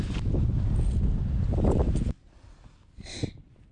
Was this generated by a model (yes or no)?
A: no